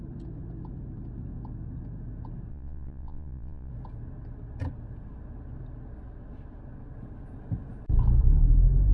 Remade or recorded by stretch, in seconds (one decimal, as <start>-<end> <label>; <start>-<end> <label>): 0.0-2.5 recorded; 2.5-3.7 remade; 3.7-8.9 recorded